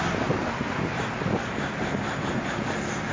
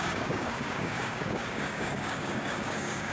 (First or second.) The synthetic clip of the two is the second